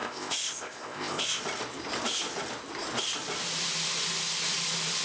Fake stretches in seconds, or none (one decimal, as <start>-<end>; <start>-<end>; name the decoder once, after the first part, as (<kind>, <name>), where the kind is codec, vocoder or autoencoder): 0.0-1.4 (codec, ZipCodec)